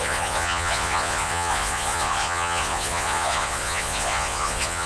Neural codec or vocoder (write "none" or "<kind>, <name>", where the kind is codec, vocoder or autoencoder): vocoder, Vocos